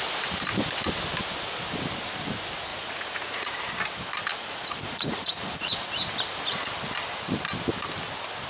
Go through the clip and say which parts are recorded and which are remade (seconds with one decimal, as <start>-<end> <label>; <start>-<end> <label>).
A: 0.0-2.7 recorded; 2.7-3.5 remade; 3.5-4.3 recorded; 4.3-5.9 remade; 5.9-8.5 recorded